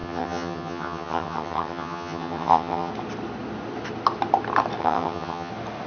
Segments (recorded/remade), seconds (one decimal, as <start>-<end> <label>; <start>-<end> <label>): 0.0-2.9 remade; 2.9-4.8 recorded; 4.8-5.5 remade; 5.5-5.9 recorded